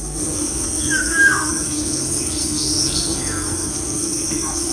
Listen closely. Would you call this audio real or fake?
fake